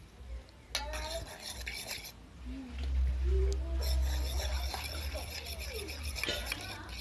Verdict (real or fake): real